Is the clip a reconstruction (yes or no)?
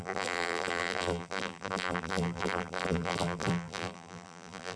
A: yes